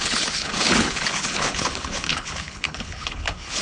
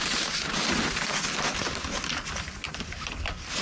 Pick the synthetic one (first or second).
first